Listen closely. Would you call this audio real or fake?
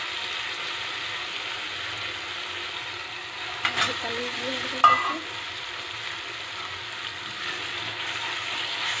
real